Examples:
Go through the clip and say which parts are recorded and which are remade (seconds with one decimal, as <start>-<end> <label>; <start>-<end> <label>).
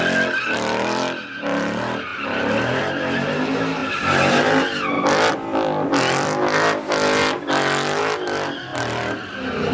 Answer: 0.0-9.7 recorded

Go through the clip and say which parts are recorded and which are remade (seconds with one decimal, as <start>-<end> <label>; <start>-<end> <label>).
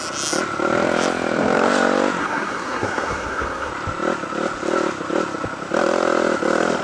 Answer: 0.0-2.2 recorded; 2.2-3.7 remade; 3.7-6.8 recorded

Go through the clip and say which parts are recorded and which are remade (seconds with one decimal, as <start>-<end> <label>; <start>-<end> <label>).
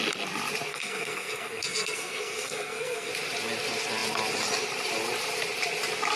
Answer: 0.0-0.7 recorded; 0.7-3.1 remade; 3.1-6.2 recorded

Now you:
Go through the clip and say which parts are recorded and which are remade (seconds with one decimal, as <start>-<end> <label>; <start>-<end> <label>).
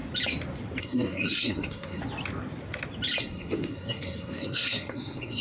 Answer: 0.0-0.8 recorded; 0.8-2.0 remade; 2.0-3.2 recorded; 3.2-5.4 remade